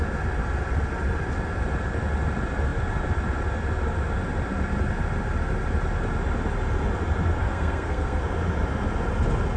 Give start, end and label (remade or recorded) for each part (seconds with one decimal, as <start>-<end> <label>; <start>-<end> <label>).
0.0-7.4 recorded; 7.4-8.2 remade; 8.2-9.6 recorded